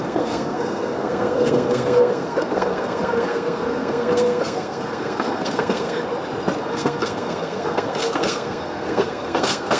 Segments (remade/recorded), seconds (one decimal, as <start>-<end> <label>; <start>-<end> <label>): 0.0-6.0 remade; 6.0-6.6 recorded; 6.6-9.8 remade